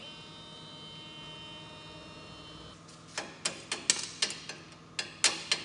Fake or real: real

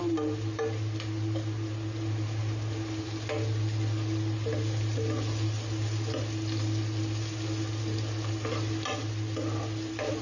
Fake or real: real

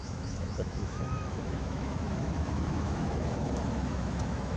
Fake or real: fake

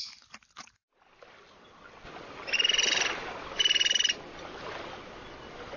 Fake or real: real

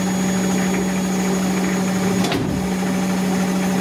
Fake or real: real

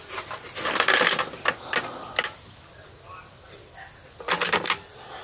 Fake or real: real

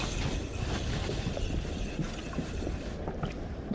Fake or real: real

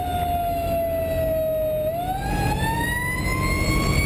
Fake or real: real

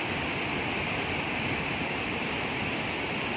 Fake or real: real